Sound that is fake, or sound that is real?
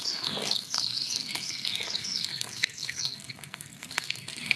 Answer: fake